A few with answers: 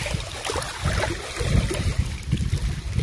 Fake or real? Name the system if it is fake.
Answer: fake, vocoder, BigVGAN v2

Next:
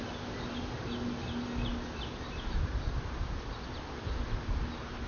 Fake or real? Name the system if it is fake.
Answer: real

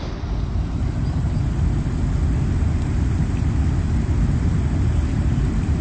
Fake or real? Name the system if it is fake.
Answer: real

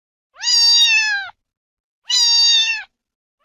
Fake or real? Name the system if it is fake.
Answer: real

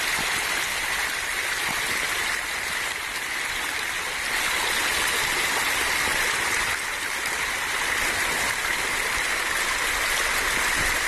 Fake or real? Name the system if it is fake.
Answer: real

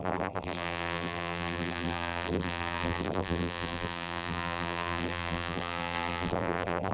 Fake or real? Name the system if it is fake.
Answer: fake, vocoder, BigVGAN v2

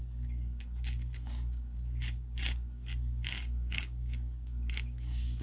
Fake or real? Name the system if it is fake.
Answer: fake, codec, DAC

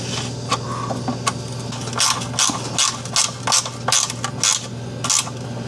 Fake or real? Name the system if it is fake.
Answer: real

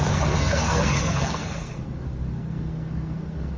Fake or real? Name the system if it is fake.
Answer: fake, codec, SNAC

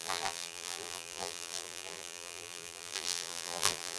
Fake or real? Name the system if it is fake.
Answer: fake, vocoder, BigVGAN v2